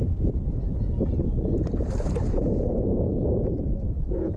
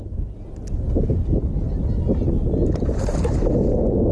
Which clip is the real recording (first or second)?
second